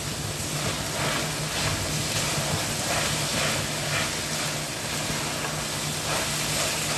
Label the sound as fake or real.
real